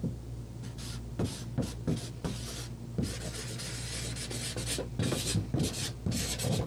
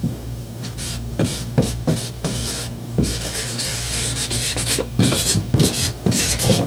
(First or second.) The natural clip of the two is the first